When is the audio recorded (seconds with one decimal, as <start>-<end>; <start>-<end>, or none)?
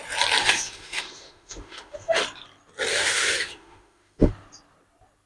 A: 0.0-0.4; 2.2-2.9; 4.3-5.3